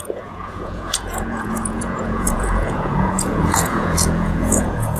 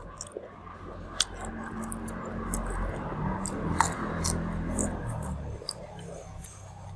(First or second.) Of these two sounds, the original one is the second